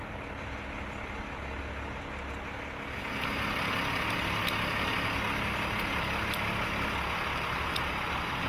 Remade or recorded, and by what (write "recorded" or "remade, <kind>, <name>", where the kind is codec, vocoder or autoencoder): recorded